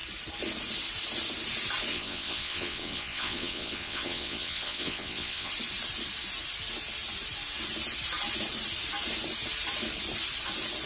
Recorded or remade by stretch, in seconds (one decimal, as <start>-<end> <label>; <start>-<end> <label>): 0.0-1.9 recorded; 1.9-5.5 remade; 5.5-10.9 recorded